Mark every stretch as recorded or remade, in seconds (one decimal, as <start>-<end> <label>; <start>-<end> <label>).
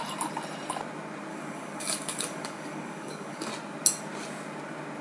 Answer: 0.0-1.3 recorded; 1.3-3.5 remade; 3.5-5.0 recorded